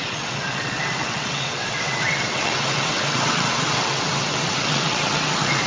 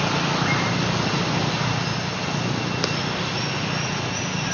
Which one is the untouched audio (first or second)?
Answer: second